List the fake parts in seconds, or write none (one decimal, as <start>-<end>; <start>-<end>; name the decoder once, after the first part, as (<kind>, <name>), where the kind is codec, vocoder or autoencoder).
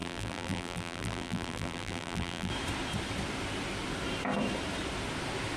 0.0-2.5 (vocoder, BigVGAN v2)